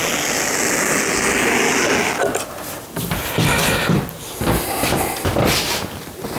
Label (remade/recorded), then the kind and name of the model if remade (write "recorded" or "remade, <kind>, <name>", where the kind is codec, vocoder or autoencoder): recorded